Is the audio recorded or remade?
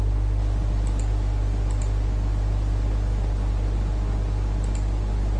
recorded